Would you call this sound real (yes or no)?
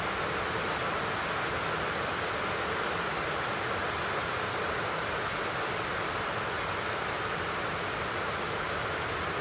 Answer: yes